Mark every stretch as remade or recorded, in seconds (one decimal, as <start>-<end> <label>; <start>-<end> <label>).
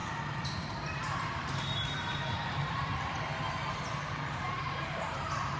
0.0-3.3 remade; 3.3-4.3 recorded; 4.3-5.6 remade